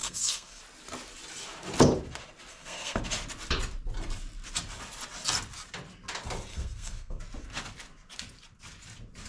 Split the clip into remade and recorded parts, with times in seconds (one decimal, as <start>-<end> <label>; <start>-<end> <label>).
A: 0.0-0.6 remade; 0.6-2.5 recorded; 2.5-3.0 remade; 3.0-6.5 recorded; 6.5-7.2 remade; 7.2-9.3 recorded